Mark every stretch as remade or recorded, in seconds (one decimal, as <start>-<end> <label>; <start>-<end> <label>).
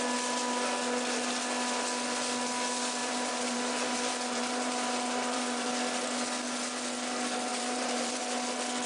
0.0-3.0 recorded; 3.0-5.7 remade; 5.7-7.5 recorded; 7.5-8.2 remade; 8.2-8.9 recorded